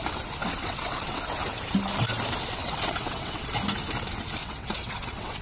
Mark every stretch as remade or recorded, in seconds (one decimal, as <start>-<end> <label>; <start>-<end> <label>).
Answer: 0.0-0.4 recorded; 0.4-1.2 remade; 1.2-2.6 recorded; 2.6-3.5 remade; 3.5-4.4 recorded; 4.4-5.4 remade